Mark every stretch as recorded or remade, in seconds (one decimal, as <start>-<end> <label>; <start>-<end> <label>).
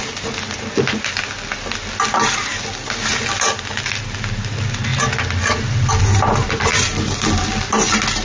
0.0-8.2 recorded